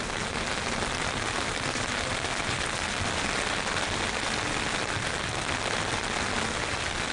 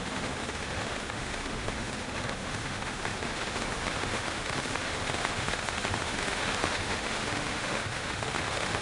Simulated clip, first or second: second